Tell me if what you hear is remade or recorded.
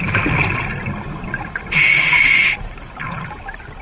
recorded